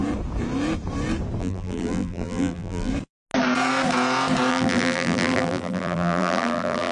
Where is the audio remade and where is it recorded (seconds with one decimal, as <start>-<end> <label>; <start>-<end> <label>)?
0.0-1.4 recorded; 1.4-2.9 remade; 2.9-4.5 recorded; 4.5-6.9 remade